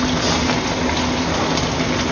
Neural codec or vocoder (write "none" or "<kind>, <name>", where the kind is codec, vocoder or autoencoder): none